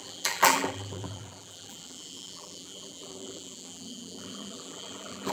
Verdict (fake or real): fake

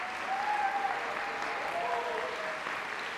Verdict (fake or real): real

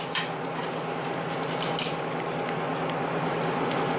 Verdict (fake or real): real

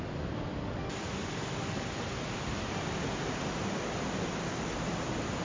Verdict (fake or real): real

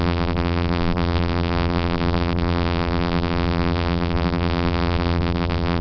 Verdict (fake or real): fake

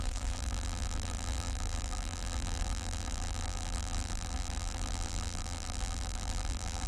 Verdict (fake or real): fake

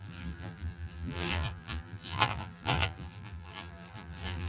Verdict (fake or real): fake